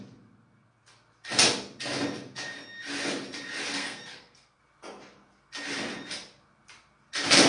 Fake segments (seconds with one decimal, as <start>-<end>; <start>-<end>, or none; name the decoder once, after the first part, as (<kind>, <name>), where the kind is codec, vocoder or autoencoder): 3.8-4.6 (codec, SNAC)